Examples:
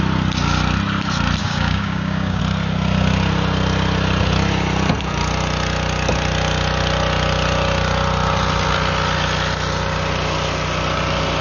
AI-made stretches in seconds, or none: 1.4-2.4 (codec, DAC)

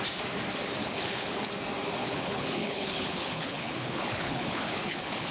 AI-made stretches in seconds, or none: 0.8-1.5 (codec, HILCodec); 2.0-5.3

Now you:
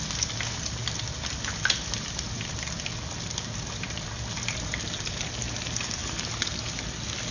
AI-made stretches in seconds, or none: none

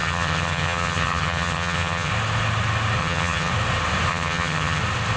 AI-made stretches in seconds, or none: 0.0-2.1 (vocoder, HiFi-GAN); 3.0-3.5; 4.1-4.8

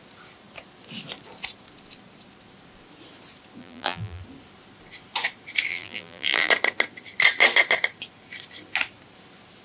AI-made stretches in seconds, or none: 3.6-4.2 (vocoder, BigVGAN v2); 5.7-6.5

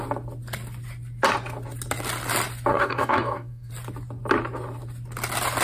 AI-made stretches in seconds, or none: 2.7-3.7 (codec, DAC)